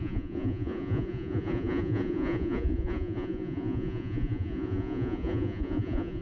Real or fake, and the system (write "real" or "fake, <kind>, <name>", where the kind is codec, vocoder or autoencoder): fake, vocoder, Vocos